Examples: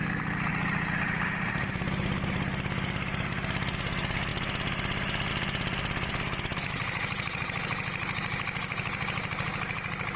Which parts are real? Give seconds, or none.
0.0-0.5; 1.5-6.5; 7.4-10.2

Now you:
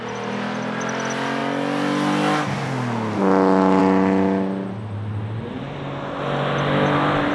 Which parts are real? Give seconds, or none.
0.0-7.3

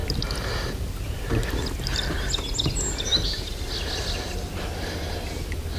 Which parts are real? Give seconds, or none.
0.0-5.8